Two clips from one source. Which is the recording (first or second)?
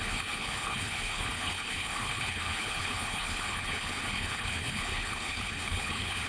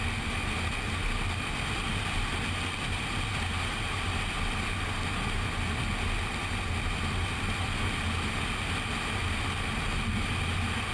second